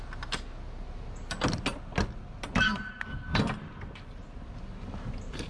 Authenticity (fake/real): real